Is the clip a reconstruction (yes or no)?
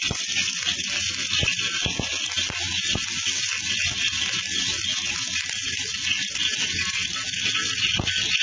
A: no